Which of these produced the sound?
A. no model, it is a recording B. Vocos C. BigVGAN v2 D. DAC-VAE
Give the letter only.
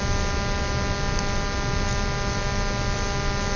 A